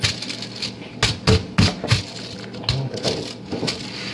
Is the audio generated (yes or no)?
no